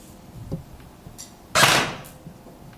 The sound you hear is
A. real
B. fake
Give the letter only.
A